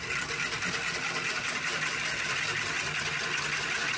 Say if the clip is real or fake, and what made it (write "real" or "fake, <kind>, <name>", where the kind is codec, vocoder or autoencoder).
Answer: real